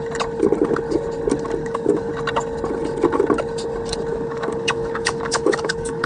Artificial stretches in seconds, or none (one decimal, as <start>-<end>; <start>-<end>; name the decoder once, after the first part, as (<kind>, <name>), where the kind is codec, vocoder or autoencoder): 1.6-2.1 (codec, DAC); 4.1-6.1